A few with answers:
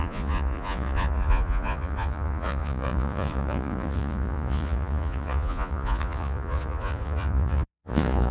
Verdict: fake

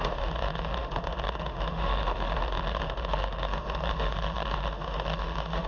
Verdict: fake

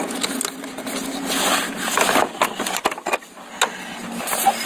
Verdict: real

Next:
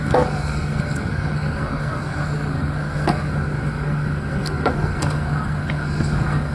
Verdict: fake